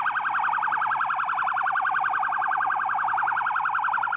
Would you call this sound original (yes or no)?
yes